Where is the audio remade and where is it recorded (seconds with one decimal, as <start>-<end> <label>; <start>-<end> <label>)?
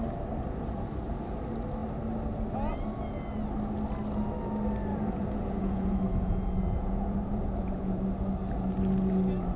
0.0-4.9 recorded; 4.9-8.0 remade; 8.0-9.6 recorded